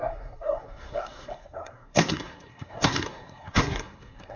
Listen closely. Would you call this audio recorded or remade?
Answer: remade